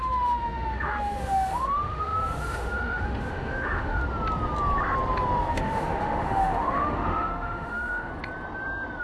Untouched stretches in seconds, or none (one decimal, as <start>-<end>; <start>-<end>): 4.0-5.5; 8.1-9.0